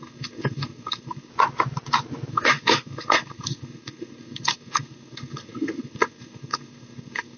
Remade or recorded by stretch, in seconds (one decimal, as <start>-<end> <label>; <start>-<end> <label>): 0.0-1.3 remade; 1.3-2.3 recorded; 2.3-7.4 remade